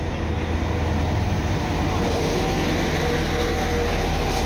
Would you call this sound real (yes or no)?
yes